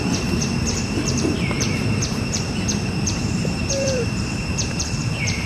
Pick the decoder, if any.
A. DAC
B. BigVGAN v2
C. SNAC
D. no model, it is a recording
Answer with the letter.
B